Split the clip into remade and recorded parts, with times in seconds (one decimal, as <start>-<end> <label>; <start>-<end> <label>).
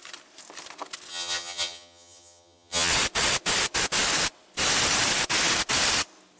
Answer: 0.0-1.1 recorded; 1.1-2.9 remade; 2.9-6.4 recorded